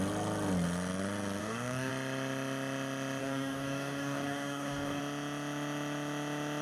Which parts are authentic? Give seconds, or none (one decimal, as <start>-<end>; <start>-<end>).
0.0-1.4; 1.9-3.2; 5.0-6.6